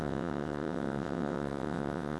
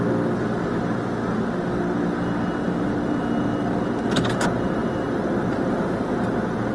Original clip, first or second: second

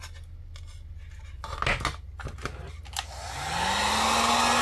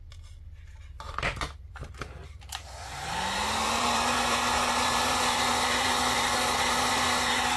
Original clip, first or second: first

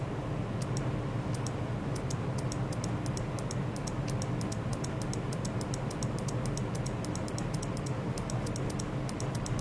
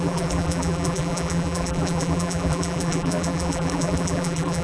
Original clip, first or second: first